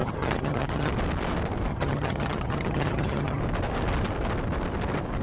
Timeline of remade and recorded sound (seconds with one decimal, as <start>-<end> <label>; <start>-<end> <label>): 0.0-0.9 remade; 0.9-1.7 recorded; 1.7-3.4 remade; 3.4-5.2 recorded